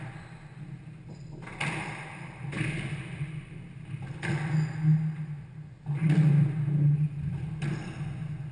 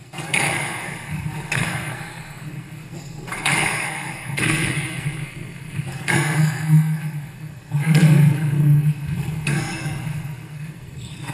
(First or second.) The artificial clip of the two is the second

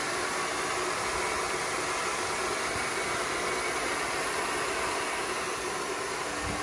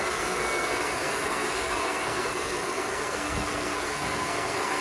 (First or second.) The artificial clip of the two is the second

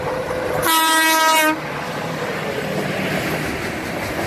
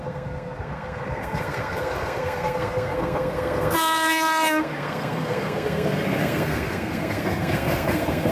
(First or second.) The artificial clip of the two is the second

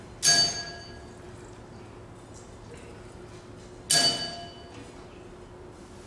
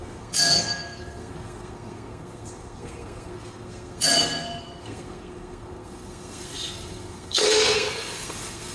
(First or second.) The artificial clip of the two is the second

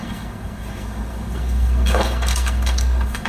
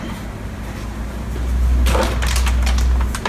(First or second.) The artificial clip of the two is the first